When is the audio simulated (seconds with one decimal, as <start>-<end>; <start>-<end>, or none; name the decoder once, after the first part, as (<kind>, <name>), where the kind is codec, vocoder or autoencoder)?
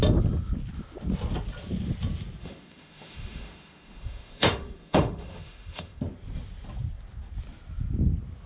2.4-6.0 (autoencoder, DAC-VAE)